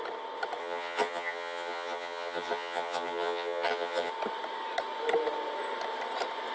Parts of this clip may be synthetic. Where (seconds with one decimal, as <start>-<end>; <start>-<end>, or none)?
0.6-4.1